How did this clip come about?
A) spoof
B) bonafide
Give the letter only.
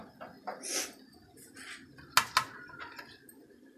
B